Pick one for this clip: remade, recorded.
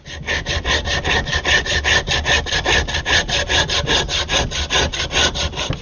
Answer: recorded